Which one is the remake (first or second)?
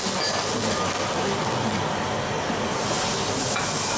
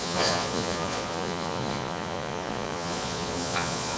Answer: second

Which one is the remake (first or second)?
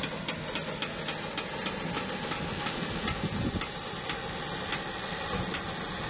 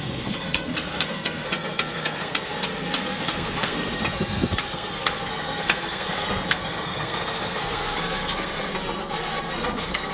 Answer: second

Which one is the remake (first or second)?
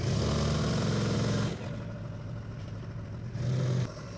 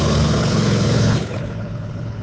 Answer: second